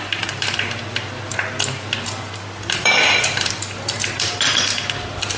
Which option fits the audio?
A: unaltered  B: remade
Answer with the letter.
B